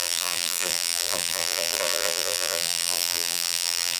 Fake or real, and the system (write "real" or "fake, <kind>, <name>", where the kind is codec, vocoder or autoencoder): fake, vocoder, BigVGAN v2